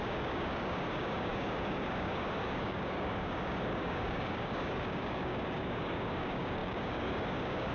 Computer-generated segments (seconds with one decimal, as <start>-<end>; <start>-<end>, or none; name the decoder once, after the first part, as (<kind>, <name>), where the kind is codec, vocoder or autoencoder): 0.0-7.7 (codec, DAC)